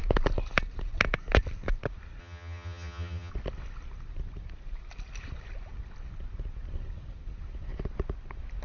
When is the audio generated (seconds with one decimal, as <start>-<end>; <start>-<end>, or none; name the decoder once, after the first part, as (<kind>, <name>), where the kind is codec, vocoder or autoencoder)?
2.2-3.3 (vocoder, HiFi-GAN)